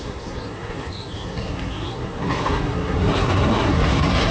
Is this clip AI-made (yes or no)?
yes